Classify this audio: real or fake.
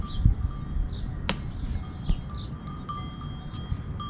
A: real